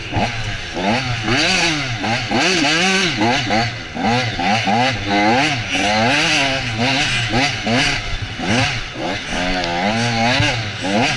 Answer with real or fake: real